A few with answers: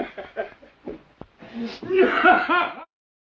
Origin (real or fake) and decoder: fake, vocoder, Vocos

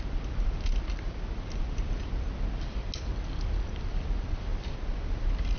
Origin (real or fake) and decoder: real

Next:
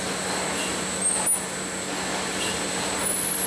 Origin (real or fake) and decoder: real